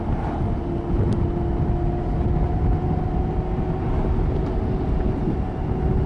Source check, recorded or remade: recorded